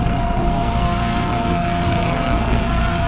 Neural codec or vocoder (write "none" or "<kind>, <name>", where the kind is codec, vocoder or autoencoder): codec, SNAC